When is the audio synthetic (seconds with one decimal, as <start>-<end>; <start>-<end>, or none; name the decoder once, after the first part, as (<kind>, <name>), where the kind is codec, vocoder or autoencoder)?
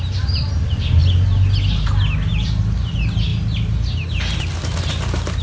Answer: none